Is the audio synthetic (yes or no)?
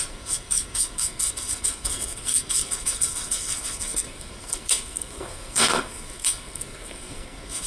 yes